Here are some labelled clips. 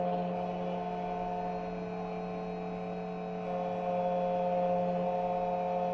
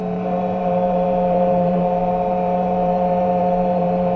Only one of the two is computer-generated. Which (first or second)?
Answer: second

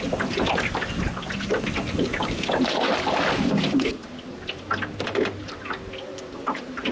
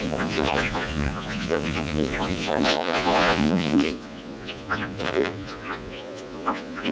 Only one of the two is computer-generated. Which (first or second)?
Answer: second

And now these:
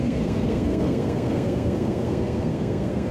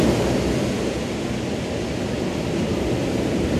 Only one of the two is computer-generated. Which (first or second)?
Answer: first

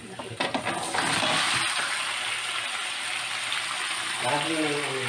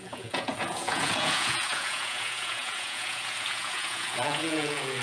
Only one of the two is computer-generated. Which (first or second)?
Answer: second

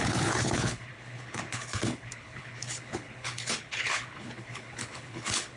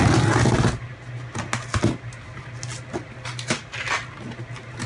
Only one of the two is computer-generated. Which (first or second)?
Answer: first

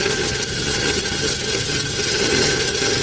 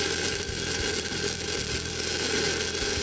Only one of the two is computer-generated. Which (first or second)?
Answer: first